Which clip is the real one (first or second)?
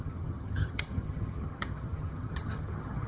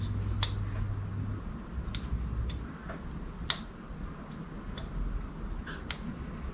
second